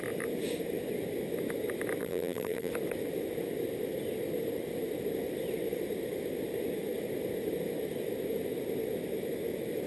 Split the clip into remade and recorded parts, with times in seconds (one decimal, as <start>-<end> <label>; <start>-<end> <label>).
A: 0.0-2.0 recorded; 2.0-2.7 remade; 2.7-9.9 recorded